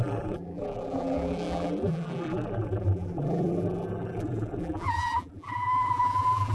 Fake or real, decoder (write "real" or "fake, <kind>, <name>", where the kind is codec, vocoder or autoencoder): fake, vocoder, BigVGAN v2